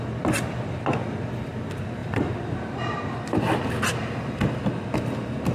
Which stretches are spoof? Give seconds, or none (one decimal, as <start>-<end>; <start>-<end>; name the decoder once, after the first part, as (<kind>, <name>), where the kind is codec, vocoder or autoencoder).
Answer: 2.0-3.2 (vocoder, BigVGAN v2)